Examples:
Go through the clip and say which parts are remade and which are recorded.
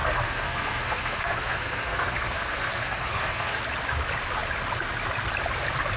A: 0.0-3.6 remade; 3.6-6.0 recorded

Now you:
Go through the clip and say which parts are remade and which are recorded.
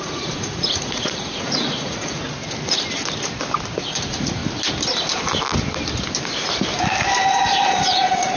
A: 0.0-2.2 remade; 2.2-3.8 recorded; 3.8-4.4 remade; 4.4-7.3 recorded; 7.3-8.4 remade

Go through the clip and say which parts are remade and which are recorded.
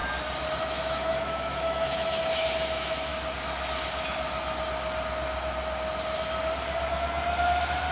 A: 0.0-0.6 recorded; 0.6-3.1 remade; 3.1-7.9 recorded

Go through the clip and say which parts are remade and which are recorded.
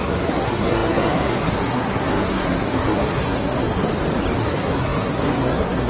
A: 0.0-3.9 remade; 3.9-4.4 recorded; 4.4-5.9 remade